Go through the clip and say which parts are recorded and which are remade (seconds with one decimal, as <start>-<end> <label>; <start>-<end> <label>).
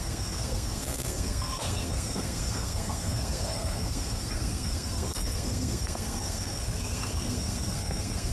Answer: 0.0-8.3 remade